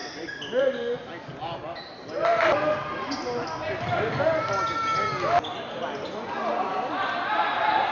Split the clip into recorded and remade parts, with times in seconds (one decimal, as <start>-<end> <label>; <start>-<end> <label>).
0.0-7.9 recorded